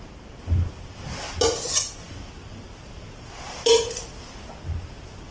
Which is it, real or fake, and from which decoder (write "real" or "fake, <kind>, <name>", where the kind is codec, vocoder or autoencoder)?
real